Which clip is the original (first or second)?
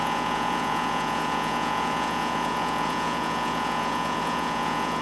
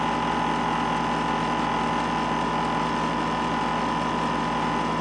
second